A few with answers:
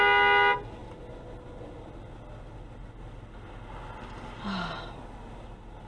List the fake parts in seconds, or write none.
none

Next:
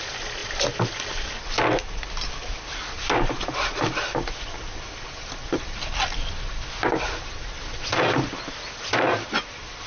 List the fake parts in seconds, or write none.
none

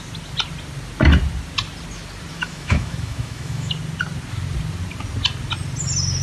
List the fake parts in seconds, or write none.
2.3-3.7

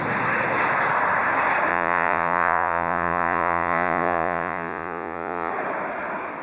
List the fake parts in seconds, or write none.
1.7-5.5